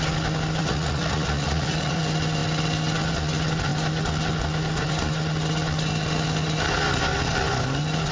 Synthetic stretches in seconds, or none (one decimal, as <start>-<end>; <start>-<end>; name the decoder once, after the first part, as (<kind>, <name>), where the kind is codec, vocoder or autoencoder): 0.6-2.0 (vocoder, Vocos)